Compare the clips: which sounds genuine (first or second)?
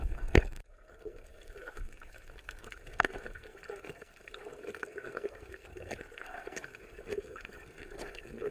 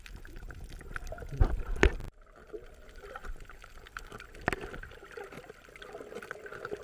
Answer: second